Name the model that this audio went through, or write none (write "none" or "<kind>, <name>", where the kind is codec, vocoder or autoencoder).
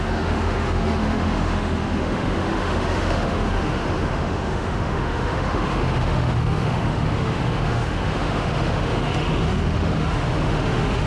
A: autoencoder, DAC-VAE